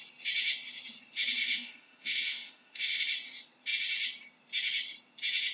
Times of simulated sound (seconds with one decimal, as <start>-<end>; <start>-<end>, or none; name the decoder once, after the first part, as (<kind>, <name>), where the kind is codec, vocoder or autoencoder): 1.4-3.0 (autoencoder, DAC-VAE)